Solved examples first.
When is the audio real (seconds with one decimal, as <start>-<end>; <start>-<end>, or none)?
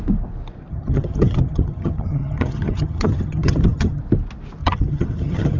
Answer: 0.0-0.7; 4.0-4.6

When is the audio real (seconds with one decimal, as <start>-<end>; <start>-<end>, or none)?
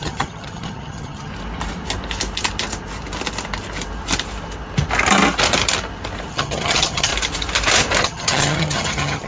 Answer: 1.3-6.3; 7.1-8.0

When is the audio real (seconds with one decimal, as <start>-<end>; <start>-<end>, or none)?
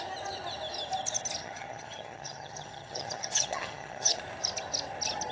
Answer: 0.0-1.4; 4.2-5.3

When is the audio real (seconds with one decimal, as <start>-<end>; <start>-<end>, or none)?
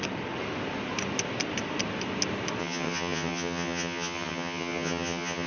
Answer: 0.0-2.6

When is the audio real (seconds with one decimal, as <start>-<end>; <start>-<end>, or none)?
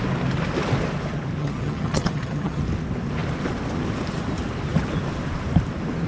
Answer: 0.0-1.4; 2.6-6.1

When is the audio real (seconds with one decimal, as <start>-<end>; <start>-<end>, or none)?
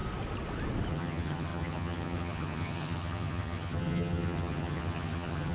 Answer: 0.0-0.9